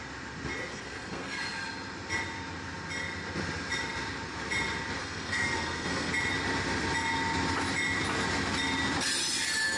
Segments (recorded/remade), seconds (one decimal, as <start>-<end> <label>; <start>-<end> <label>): 0.0-0.7 recorded; 0.7-1.4 remade; 1.4-5.0 recorded; 5.0-6.1 remade; 6.1-9.8 recorded